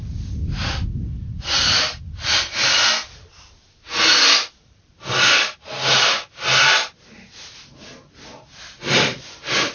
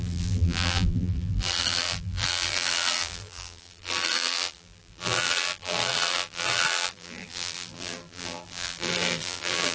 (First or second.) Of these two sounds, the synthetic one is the second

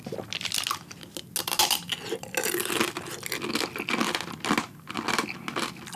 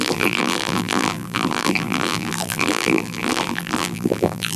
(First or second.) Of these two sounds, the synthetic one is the second